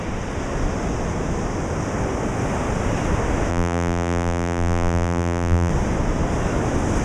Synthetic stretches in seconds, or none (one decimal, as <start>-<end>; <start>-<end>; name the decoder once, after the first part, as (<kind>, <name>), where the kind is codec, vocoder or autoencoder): 3.5-5.7 (vocoder, BigVGAN v2)